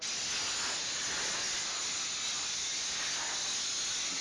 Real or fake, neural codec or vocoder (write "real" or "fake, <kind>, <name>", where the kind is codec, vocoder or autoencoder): real